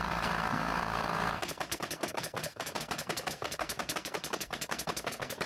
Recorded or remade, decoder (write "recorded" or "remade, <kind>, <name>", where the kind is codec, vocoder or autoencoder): remade, codec, SNAC